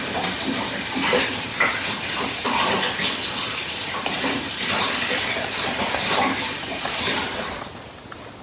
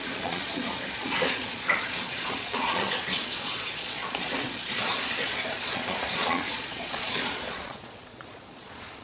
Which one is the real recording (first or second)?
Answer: first